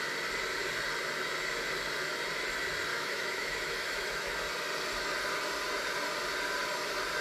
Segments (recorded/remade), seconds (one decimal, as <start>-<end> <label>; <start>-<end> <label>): 0.0-2.9 recorded; 2.9-4.3 remade; 4.3-7.2 recorded